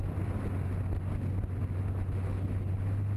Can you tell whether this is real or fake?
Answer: real